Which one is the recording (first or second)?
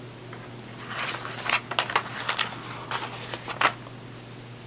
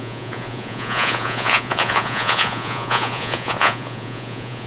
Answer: first